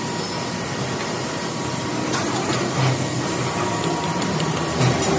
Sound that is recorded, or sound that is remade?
recorded